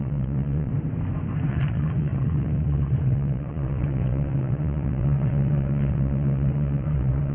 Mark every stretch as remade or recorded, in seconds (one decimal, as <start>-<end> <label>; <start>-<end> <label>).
0.0-0.7 remade; 0.7-1.5 recorded; 1.5-7.3 remade